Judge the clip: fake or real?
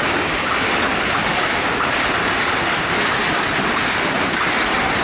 real